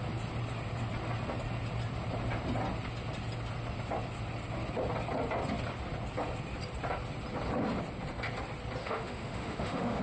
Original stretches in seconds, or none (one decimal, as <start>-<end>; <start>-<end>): 0.0-8.8